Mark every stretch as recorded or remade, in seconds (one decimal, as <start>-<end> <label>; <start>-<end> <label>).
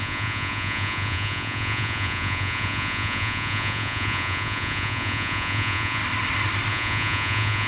0.0-6.0 remade; 6.0-6.7 recorded; 6.7-7.7 remade